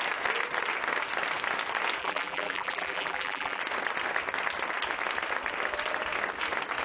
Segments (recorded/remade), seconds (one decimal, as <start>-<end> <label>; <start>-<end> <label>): 0.0-2.0 recorded; 2.0-3.6 remade; 3.6-6.8 recorded